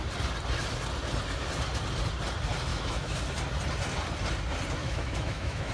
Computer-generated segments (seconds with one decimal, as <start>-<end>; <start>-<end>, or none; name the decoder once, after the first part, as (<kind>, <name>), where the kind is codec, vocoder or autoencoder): 2.7-3.2 (autoencoder, DAC-VAE); 4.8-5.7